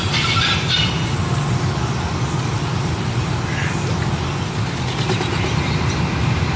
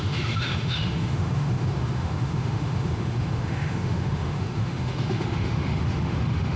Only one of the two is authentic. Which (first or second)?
first